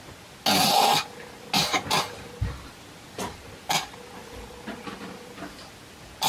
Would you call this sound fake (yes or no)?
no